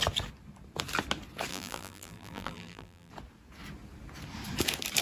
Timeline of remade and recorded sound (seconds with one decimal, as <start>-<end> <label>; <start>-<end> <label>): 0.0-1.5 recorded; 1.5-3.1 remade; 3.1-5.0 recorded